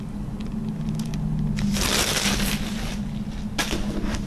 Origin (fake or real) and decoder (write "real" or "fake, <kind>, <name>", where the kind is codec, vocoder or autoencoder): real